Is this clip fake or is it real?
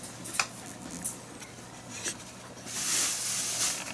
real